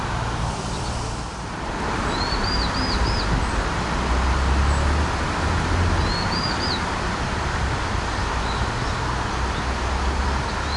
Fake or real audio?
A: real